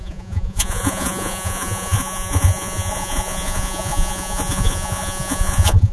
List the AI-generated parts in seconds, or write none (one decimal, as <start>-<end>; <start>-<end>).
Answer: 0.0-5.9